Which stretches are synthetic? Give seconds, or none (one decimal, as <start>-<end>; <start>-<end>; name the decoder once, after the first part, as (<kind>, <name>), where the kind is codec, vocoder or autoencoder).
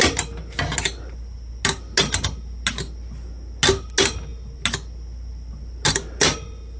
none